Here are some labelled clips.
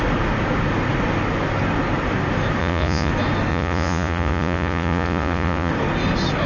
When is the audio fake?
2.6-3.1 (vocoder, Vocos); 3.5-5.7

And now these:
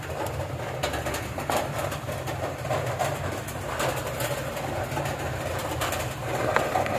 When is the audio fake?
none